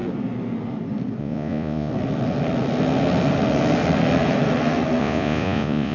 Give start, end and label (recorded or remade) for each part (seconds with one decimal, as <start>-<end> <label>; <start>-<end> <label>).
0.0-1.2 recorded; 1.2-1.9 remade; 1.9-5.0 recorded; 5.0-5.9 remade

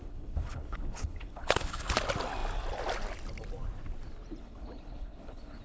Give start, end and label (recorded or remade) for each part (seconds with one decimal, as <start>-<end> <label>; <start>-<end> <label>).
0.0-1.9 remade; 1.9-4.4 recorded; 4.4-5.6 remade

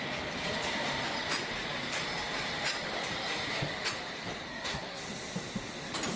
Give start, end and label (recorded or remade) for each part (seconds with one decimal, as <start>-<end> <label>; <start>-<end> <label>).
0.0-4.5 recorded; 4.5-5.0 remade; 5.0-6.2 recorded